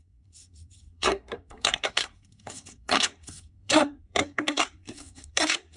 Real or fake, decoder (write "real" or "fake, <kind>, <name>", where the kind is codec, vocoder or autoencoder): fake, codec, SNAC